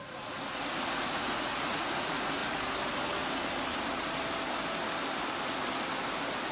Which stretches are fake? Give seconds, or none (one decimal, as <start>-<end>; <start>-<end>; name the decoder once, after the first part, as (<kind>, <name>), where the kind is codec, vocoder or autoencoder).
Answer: 0.0-2.4 (vocoder, Vocos)